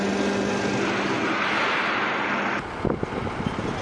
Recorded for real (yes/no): yes